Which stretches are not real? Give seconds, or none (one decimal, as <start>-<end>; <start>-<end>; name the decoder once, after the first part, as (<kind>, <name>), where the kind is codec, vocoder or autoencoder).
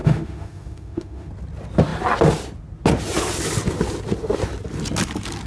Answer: 0.0-1.3 (autoencoder, DAC-VAE)